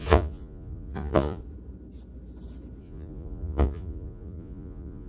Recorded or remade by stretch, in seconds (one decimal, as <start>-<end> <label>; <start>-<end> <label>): 0.0-1.4 remade; 1.4-2.8 recorded; 2.8-5.1 remade